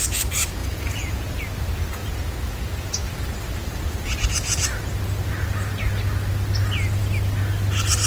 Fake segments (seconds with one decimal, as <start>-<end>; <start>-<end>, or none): 0.6-1.3; 2.0-2.9